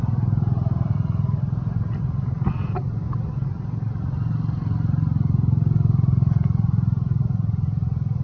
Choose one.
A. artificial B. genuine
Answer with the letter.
B